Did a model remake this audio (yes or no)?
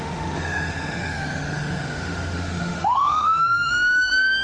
yes